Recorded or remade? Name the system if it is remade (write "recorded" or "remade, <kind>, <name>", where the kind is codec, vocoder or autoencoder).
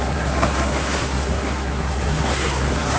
remade, codec, SNAC